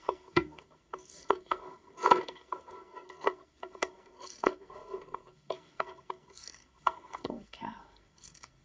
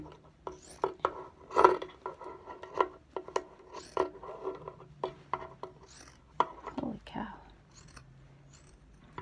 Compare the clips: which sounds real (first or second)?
second